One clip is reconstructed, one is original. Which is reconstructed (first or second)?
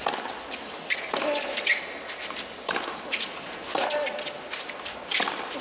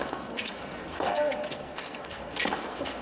second